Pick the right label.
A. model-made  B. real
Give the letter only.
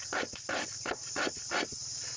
A